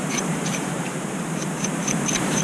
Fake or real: fake